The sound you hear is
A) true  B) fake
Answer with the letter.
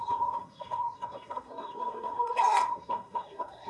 B